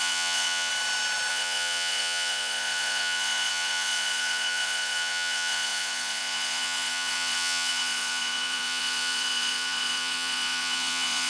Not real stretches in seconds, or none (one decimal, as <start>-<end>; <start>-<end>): 0.0-0.7; 1.3-11.3